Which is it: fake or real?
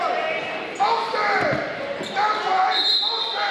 real